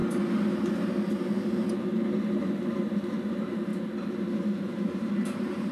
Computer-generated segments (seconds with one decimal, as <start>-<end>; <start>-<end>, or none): 3.2-3.7; 4.6-5.7